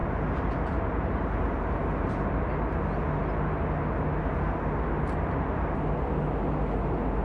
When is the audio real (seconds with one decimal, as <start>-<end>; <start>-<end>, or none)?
1.8-7.2